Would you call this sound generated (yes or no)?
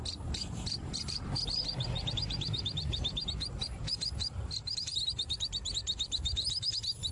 yes